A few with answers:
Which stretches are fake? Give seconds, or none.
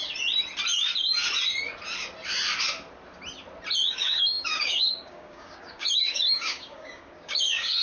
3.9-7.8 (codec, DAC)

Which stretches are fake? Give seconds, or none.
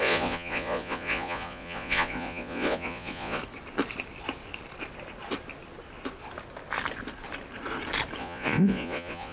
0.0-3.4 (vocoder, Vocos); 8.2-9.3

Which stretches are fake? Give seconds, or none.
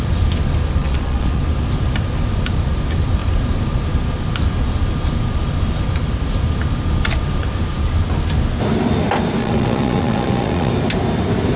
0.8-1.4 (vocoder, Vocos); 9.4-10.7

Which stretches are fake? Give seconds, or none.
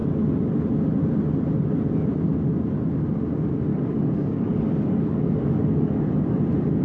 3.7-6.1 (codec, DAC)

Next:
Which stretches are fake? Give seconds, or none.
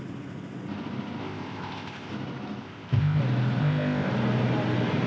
1.2-2.1 (codec, ZipCodec); 2.6-3.2; 3.6-4.1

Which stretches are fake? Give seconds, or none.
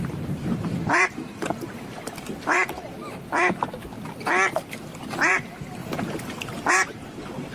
0.0-3.0 (vocoder, BigVGAN v2); 5.3-7.5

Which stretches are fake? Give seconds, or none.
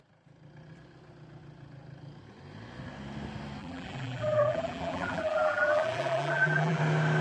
3.6-6.8 (vocoder, BigVGAN v2)